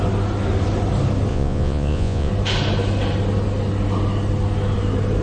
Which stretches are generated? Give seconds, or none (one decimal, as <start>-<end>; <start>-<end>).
1.3-2.3

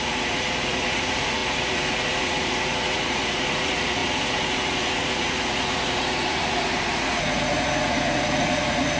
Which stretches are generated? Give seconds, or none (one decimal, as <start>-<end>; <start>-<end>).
0.0-9.0

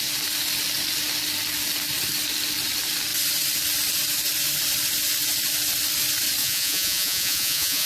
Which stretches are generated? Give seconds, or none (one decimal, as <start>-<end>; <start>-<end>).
6.4-7.9